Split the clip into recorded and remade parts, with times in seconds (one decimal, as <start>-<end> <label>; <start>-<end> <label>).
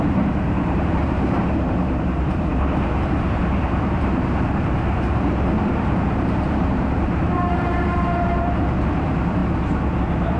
0.0-9.4 remade; 9.4-10.0 recorded; 10.0-10.4 remade